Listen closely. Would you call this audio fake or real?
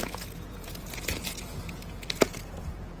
fake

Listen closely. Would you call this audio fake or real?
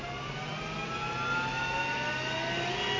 real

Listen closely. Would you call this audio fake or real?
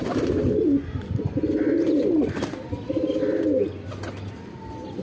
real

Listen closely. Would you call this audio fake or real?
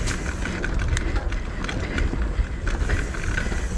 real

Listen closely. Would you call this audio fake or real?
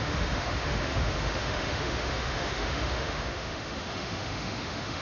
fake